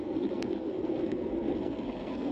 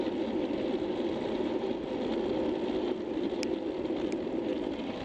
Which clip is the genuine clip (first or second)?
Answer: second